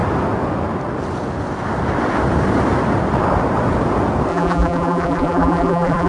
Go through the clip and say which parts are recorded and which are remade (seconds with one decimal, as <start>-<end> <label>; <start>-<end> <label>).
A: 0.0-4.3 recorded; 4.3-6.1 remade